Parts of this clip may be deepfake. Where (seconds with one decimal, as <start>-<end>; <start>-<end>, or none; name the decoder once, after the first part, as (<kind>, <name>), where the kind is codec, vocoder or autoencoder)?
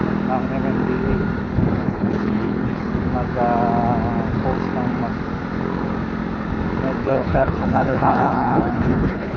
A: 1.8-2.9 (codec, HILCodec); 7.0-9.4